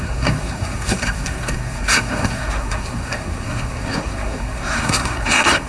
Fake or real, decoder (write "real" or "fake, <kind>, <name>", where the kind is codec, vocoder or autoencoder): fake, codec, SNAC